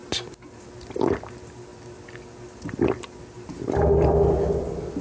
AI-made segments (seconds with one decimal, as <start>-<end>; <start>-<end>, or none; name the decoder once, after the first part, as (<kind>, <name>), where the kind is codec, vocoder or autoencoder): none